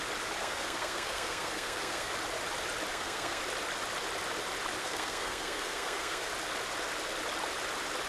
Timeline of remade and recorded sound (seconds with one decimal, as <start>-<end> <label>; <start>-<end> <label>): 0.0-0.4 recorded; 0.4-2.1 remade; 2.1-2.9 recorded; 2.9-3.4 remade; 3.4-4.8 recorded; 4.8-6.3 remade; 6.3-8.1 recorded